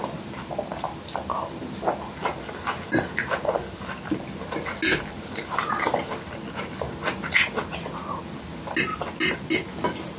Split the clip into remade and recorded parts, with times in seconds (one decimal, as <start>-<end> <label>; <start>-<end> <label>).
0.0-10.2 recorded